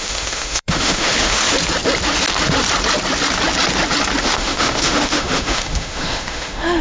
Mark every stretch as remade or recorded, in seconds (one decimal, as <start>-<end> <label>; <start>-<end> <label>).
0.0-1.4 remade; 1.4-4.2 recorded; 4.2-6.8 remade